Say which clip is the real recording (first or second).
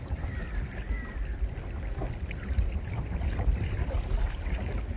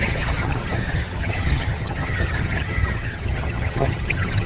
first